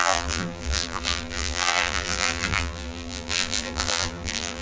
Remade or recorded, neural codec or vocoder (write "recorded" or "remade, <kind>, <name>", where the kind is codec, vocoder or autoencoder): remade, vocoder, BigVGAN v2